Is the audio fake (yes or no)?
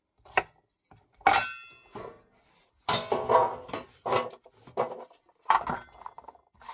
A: no